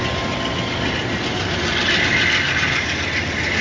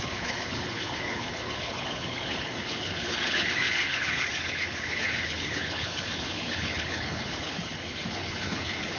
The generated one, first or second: second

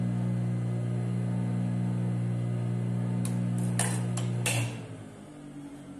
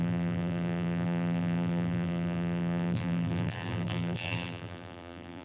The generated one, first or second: second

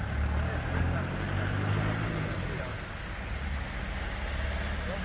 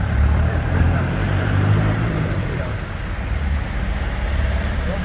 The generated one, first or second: second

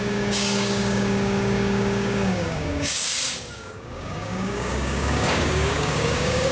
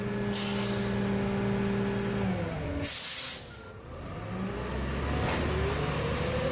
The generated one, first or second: first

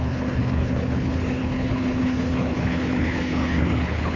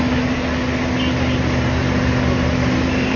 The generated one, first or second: first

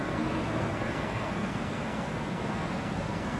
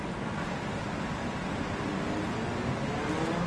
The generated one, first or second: first